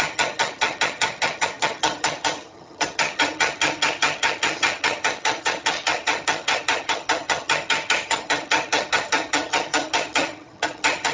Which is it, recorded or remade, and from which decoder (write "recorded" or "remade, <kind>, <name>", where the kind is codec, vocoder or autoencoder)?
remade, vocoder, HiFi-GAN